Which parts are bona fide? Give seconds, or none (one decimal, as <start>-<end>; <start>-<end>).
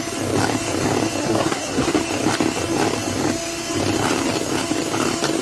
0.0-1.2; 2.0-5.4